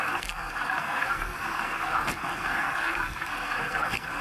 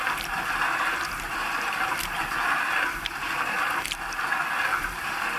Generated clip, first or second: first